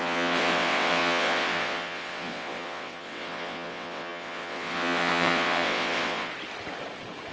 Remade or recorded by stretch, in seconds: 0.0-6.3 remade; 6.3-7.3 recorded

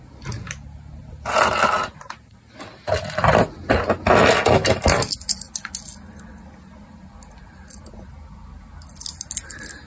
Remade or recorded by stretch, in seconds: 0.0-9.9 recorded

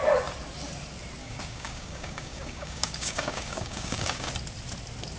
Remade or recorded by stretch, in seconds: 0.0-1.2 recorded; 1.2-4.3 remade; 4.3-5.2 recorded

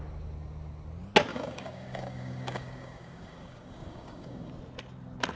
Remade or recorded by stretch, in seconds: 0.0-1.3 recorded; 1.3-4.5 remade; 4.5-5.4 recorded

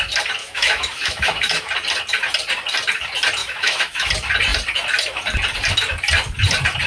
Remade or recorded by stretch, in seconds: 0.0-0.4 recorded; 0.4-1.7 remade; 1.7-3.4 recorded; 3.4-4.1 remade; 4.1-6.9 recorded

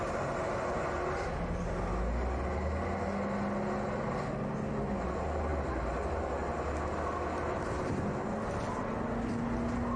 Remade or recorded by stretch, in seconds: 0.0-10.0 recorded